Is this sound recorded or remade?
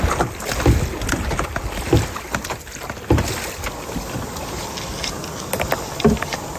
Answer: recorded